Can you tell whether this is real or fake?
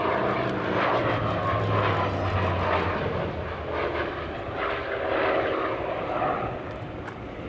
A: real